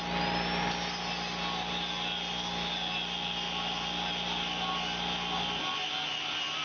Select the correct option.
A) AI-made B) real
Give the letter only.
B